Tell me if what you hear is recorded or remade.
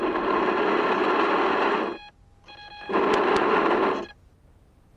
recorded